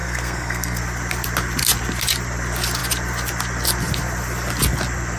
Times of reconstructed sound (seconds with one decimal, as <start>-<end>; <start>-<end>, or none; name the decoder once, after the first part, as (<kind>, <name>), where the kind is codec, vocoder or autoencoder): 0.0-0.8 (codec, SNAC)